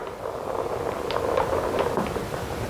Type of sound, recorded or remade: recorded